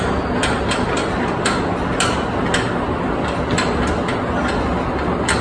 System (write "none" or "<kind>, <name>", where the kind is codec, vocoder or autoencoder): none